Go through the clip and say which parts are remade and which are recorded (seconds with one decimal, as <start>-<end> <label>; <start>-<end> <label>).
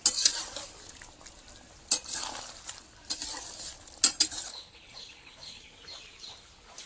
0.0-4.5 recorded; 4.5-5.6 remade; 5.6-6.9 recorded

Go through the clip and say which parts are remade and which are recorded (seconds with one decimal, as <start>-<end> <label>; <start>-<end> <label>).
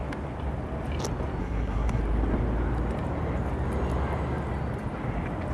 0.0-1.4 recorded; 1.4-2.0 remade; 2.0-5.5 recorded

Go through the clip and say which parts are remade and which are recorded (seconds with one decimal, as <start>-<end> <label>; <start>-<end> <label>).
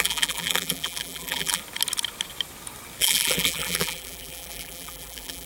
0.0-1.6 remade; 1.6-3.0 recorded; 3.0-5.5 remade